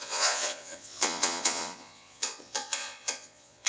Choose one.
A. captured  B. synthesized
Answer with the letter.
B